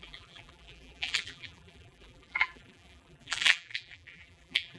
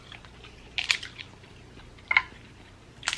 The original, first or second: second